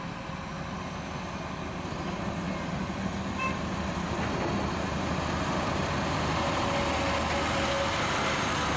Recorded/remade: recorded